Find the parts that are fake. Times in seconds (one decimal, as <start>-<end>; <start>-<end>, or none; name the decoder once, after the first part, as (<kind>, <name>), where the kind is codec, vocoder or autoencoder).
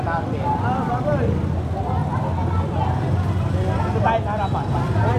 none